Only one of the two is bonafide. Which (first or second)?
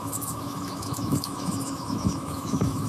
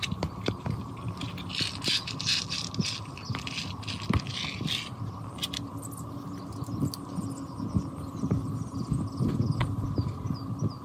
second